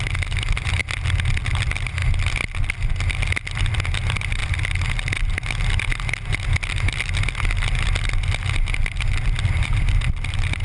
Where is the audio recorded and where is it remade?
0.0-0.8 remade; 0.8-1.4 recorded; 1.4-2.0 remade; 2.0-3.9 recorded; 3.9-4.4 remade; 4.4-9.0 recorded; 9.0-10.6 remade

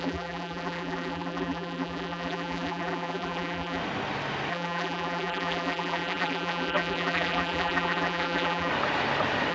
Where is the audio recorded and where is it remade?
0.0-3.8 remade; 3.8-4.5 recorded; 4.5-8.7 remade; 8.7-9.5 recorded

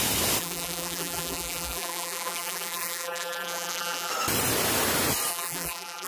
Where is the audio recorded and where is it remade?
0.0-0.4 recorded; 0.4-4.1 remade; 4.1-5.3 recorded; 5.3-6.1 remade

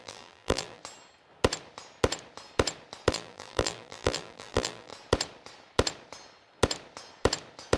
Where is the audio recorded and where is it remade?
0.0-0.8 remade; 0.8-3.1 recorded; 3.1-4.9 remade; 4.9-7.8 recorded

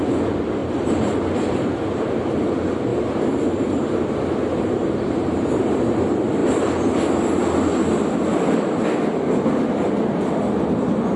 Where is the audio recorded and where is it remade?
0.0-0.6 recorded; 0.6-1.9 remade; 1.9-2.9 recorded; 2.9-6.0 remade; 6.0-11.2 recorded

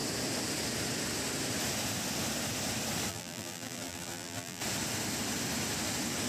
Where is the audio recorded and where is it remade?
0.0-3.1 recorded; 3.1-4.6 remade; 4.6-6.3 recorded